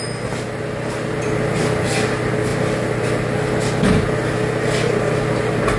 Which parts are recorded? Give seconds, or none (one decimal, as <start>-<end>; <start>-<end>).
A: 0.0-5.8